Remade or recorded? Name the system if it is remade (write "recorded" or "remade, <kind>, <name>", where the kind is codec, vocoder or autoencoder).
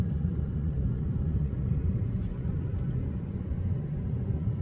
remade, vocoder, Vocos